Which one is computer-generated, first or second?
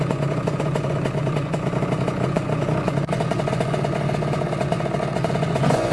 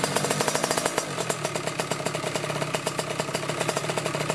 first